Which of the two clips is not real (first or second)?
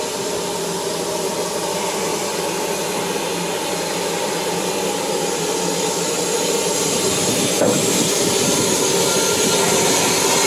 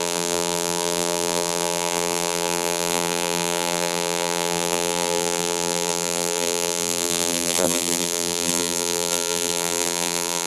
second